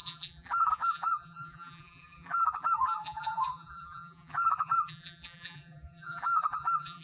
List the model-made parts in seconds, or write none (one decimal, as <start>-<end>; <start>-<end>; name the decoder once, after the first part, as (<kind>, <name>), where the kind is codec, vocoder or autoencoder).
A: 0.0-7.0 (vocoder, BigVGAN v2)